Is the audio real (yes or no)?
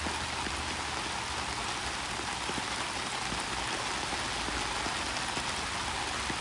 yes